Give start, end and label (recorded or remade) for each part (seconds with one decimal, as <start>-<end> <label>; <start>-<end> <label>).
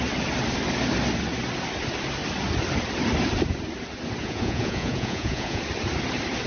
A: 0.0-4.2 recorded; 4.2-5.6 remade; 5.6-6.5 recorded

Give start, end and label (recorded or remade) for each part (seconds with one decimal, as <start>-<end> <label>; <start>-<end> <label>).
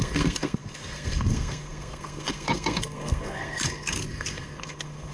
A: 0.0-5.1 remade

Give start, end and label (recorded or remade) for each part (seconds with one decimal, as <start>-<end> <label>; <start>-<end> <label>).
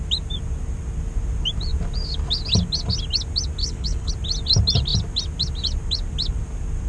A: 0.0-3.6 recorded; 3.6-4.1 remade; 4.1-6.9 recorded